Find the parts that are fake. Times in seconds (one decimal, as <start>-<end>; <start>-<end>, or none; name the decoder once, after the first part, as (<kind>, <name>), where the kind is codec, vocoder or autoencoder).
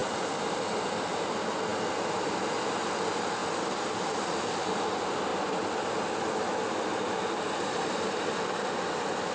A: none